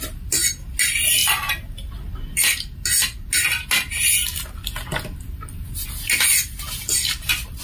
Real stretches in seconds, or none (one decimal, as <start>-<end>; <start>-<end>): 0.0-7.6